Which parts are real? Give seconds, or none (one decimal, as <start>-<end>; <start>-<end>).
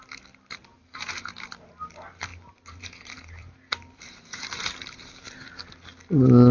0.0-0.7; 1.9-2.3; 5.1-6.5